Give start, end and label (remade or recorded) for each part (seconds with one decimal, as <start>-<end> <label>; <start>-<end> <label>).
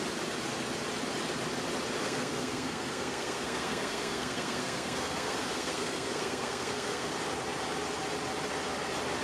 0.0-2.0 recorded; 2.0-7.1 remade; 7.1-9.2 recorded